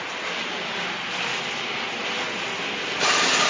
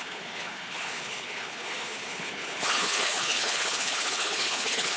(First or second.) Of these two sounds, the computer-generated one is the second